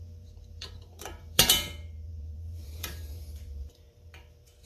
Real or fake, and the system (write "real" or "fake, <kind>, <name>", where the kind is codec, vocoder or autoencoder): fake, vocoder, BigVGAN v2